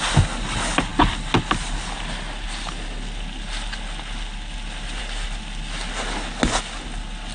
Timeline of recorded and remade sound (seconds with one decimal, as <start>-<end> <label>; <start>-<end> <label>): 0.0-7.3 recorded